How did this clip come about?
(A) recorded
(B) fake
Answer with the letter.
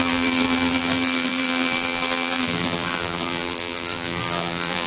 B